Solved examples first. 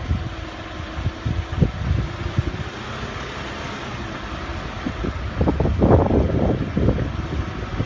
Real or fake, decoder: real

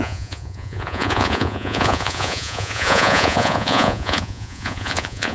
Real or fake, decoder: fake, vocoder, Vocos